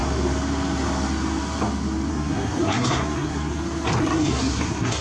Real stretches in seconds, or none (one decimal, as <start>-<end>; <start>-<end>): 0.0-2.1; 3.6-4.0